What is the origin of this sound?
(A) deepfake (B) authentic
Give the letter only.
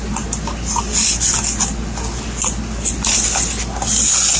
B